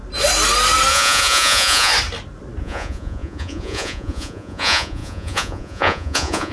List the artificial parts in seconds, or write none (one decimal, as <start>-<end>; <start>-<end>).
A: 0.9-1.9; 2.6-6.5